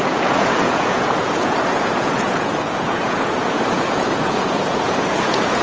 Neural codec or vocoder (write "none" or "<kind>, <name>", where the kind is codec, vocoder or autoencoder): vocoder, Vocos